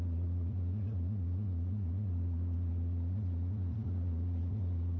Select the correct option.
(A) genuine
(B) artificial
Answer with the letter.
B